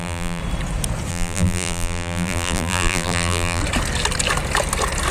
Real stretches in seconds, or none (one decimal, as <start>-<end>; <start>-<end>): 0.4-1.1; 3.6-5.1